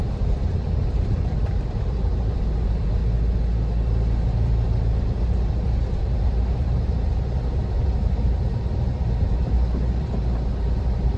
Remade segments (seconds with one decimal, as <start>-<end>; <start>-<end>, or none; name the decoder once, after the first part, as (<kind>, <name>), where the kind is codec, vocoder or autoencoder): 0.0-3.0 (vocoder, BigVGAN v2); 3.9-11.2